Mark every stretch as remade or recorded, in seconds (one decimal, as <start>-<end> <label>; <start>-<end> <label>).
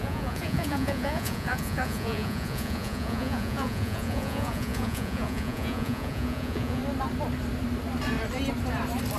0.0-6.8 remade; 6.8-9.2 recorded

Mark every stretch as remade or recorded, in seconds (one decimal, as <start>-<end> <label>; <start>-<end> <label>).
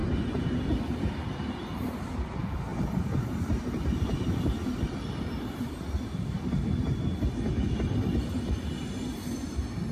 0.0-2.7 recorded; 2.7-5.6 remade; 5.6-9.9 recorded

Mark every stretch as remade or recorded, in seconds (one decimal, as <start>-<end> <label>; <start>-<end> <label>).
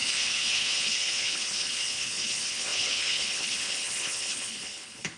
0.0-5.2 remade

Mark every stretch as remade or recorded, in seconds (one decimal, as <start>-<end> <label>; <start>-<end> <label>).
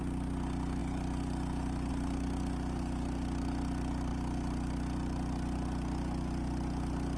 0.0-7.2 recorded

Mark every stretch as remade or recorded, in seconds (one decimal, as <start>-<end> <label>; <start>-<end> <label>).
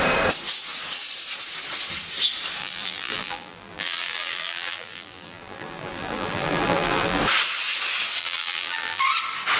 0.0-2.6 recorded; 2.6-7.2 remade; 7.2-8.2 recorded; 8.2-9.0 remade; 9.0-9.6 recorded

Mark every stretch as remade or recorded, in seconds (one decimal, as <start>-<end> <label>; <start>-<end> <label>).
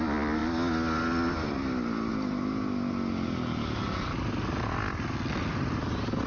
0.0-6.3 recorded